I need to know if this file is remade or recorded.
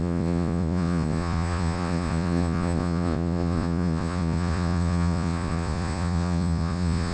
remade